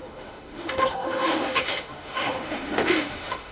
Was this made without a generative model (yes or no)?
no